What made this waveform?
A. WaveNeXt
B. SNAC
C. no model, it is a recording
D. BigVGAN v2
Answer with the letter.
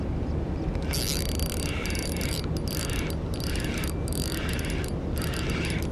C